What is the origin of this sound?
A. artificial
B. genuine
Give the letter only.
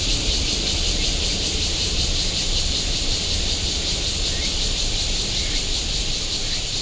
A